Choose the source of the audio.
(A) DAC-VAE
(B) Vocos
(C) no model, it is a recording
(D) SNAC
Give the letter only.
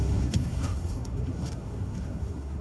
D